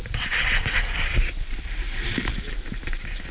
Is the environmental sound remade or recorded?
remade